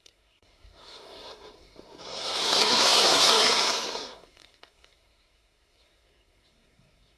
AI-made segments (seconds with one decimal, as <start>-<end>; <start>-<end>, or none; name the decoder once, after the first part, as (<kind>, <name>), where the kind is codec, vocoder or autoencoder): 0.0-7.2 (codec, SNAC)